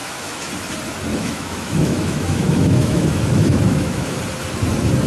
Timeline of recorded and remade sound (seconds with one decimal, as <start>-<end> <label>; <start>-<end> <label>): 0.0-0.5 remade; 0.5-1.1 recorded; 1.1-4.2 remade; 4.2-5.1 recorded